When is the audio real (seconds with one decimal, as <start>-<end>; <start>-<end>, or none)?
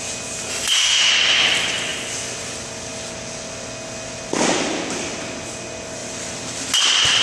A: 0.0-0.5; 1.1-7.2